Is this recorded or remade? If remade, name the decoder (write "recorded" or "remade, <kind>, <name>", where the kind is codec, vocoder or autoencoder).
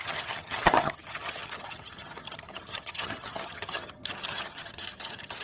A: remade, vocoder, HiFi-GAN